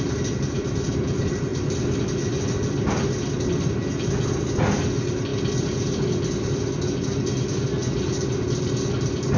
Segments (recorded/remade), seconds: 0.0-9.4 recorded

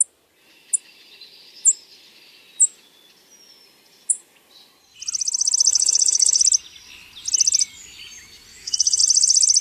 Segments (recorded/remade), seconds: 0.0-5.7 recorded; 5.7-6.4 remade; 6.4-8.5 recorded; 8.5-9.0 remade; 9.0-9.6 recorded

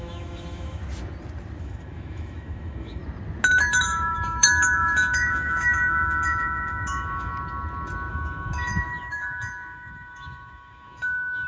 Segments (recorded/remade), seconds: 0.0-0.8 remade; 0.8-1.6 recorded; 1.6-3.0 remade; 3.0-3.5 recorded; 3.5-7.3 remade; 7.3-8.1 recorded; 8.1-11.5 remade

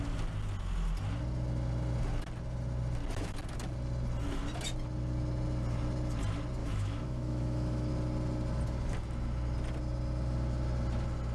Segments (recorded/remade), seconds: 0.0-6.6 recorded; 6.6-7.9 remade; 7.9-11.3 recorded

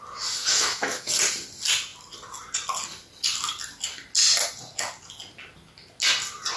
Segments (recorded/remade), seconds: 0.0-0.5 recorded; 0.5-1.1 remade; 1.1-6.6 recorded

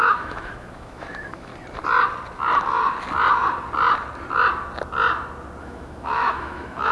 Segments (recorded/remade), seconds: 0.0-1.5 remade; 1.5-5.6 recorded; 5.6-6.9 remade